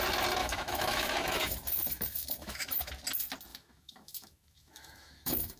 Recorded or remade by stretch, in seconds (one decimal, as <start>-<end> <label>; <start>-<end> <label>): 0.0-0.4 recorded; 0.4-2.9 remade; 2.9-3.5 recorded; 3.5-5.6 remade